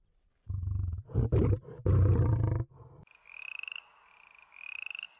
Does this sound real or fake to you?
real